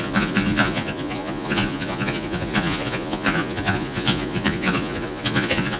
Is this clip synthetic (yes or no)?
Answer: yes